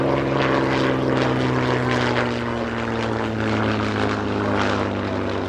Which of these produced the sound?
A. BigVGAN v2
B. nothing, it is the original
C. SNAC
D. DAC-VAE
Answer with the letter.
B